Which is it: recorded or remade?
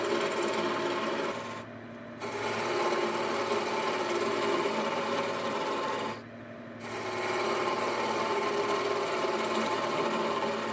recorded